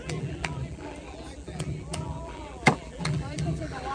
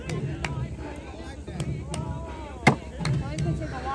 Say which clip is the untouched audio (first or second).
second